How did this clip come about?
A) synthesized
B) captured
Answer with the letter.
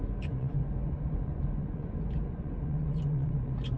A